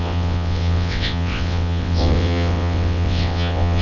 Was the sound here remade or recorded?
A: remade